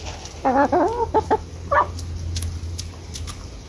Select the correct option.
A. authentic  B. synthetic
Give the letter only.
A